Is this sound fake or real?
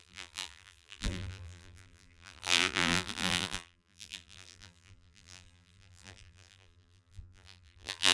fake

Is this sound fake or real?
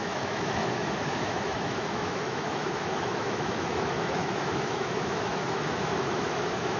fake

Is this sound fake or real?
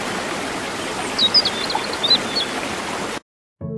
real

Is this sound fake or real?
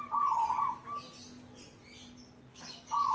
real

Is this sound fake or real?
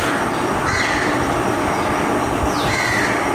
real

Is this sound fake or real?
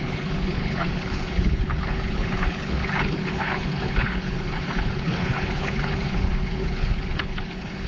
fake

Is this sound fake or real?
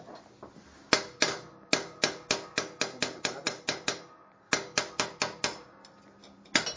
real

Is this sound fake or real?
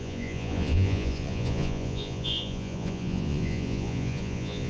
fake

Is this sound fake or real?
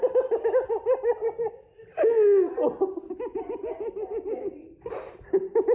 real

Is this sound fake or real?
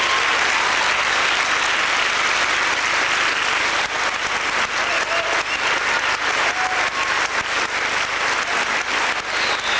real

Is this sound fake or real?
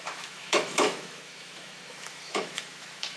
fake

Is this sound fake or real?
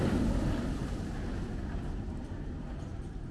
real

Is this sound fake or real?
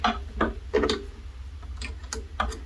real